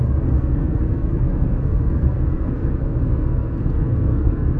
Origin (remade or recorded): remade